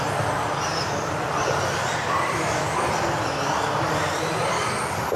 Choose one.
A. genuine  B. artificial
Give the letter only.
A